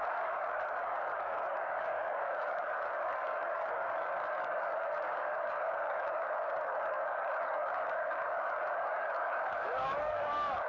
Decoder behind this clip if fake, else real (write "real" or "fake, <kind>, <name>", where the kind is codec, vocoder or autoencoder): fake, codec, DAC